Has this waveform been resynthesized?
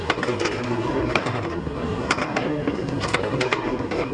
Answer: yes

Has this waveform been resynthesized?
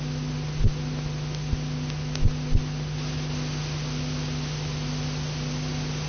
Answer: no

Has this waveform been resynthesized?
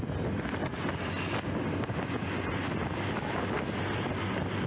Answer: no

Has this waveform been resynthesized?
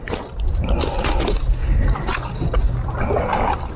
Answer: no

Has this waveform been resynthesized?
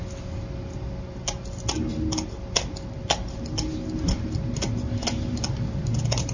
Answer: no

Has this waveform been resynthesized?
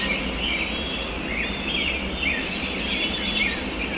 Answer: no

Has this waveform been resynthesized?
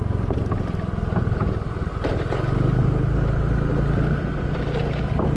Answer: no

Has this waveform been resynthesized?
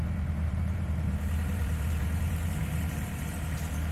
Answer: yes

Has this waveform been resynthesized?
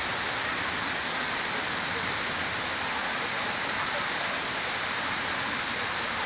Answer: no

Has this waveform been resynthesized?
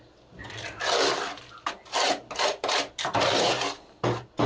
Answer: no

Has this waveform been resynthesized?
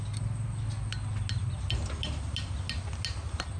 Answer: no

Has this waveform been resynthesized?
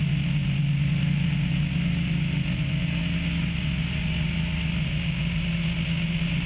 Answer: no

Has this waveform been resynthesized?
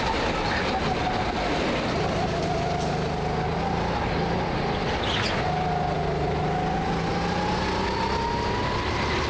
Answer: no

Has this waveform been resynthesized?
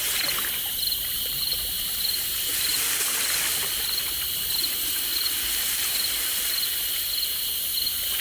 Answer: no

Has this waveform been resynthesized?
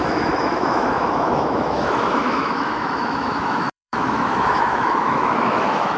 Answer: yes